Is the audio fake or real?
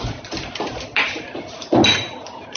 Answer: real